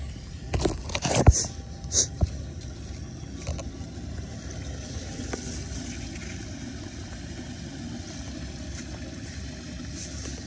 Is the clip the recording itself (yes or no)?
yes